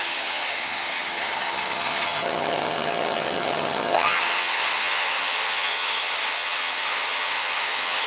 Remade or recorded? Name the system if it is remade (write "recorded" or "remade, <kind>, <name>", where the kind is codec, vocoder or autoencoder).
remade, vocoder, HiFi-GAN